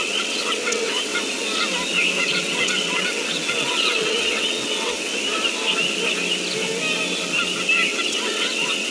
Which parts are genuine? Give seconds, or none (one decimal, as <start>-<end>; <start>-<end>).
1.1-2.2; 5.1-7.9

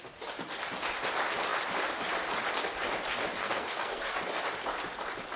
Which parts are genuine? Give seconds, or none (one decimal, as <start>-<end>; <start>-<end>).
0.0-3.4; 4.2-5.4

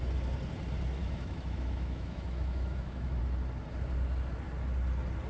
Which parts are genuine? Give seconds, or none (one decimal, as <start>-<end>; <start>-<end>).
0.0-1.0; 3.2-5.3

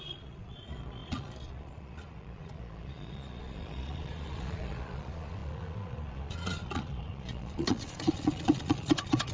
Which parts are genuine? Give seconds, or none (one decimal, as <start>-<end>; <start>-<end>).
none